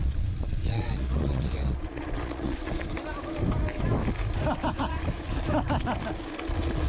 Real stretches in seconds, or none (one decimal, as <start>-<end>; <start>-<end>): 2.7-6.9